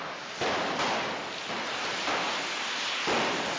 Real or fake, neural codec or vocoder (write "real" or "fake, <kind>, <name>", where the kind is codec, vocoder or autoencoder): real